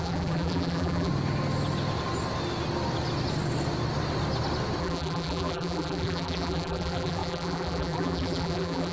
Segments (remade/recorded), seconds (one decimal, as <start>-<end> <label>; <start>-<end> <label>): 0.0-1.1 remade; 1.1-4.8 recorded; 4.8-8.9 remade